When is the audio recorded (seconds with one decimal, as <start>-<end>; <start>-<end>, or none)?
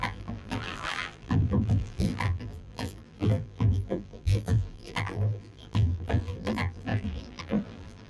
none